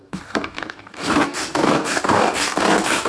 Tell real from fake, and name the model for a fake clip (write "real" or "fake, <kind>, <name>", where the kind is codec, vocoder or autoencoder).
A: fake, codec, DAC